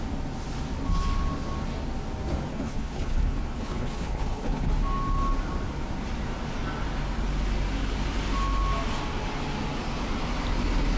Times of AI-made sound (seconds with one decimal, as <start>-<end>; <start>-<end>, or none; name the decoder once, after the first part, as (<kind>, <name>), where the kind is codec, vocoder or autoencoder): 2.5-4.7 (codec, HILCodec)